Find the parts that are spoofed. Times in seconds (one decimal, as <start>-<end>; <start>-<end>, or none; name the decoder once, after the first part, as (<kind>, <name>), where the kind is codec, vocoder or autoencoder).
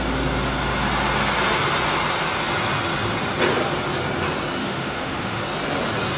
4.6-5.4 (autoencoder, DAC-VAE)